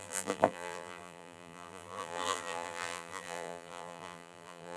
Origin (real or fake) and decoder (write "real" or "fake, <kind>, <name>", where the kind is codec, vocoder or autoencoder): fake, vocoder, BigVGAN v2